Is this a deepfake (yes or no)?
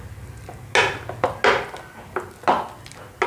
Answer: no